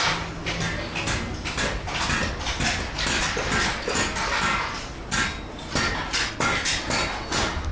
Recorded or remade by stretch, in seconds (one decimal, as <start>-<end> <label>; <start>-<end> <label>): 0.0-7.7 recorded